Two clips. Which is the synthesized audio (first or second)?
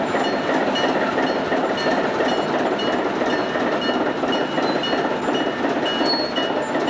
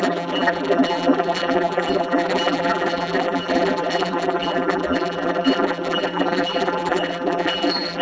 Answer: second